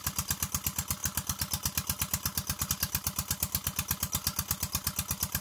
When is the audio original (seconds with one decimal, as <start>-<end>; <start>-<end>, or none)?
0.0-5.4